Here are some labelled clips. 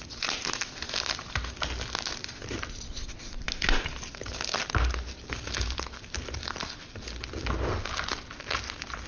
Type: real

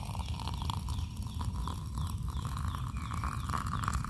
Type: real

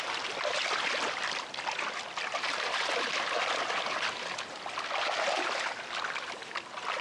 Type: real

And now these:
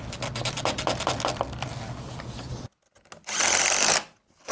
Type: real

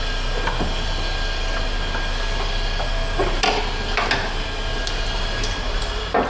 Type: real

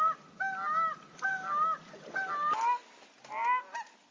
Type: real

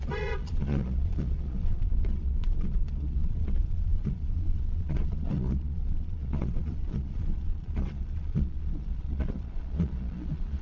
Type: fake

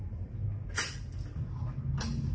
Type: real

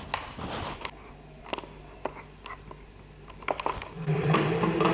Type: real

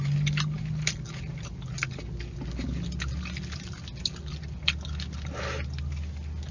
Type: real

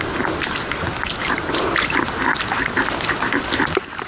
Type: real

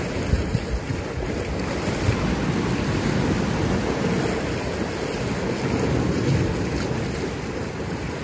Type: real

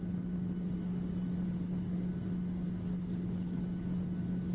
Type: real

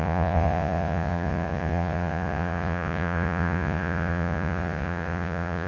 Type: fake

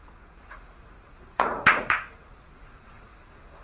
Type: fake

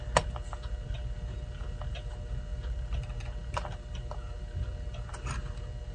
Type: real